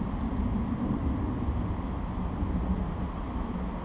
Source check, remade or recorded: recorded